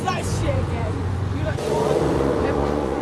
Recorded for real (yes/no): no